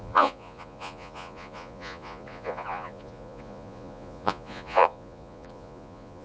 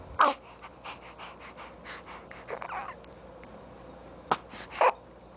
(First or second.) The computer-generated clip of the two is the first